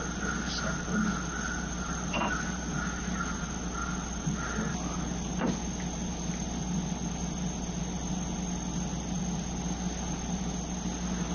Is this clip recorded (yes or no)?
yes